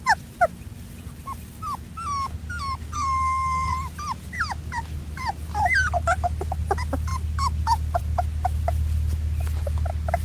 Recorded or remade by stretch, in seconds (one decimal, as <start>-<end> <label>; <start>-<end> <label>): 0.0-2.8 recorded; 2.8-3.7 remade; 3.7-10.2 recorded